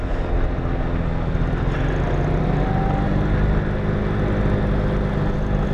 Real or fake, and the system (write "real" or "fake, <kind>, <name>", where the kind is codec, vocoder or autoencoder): real